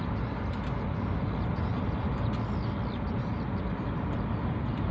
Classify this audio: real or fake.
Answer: real